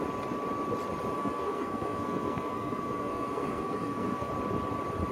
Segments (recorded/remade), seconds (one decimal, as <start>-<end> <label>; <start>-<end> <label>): 0.0-1.2 recorded; 1.2-4.3 remade; 4.3-5.1 recorded